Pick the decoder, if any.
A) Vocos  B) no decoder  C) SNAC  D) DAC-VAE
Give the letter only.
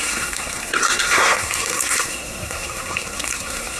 C